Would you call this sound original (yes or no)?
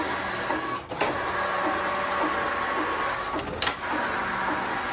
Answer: yes